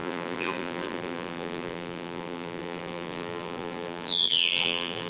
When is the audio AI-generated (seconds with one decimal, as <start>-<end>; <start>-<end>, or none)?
0.0-5.1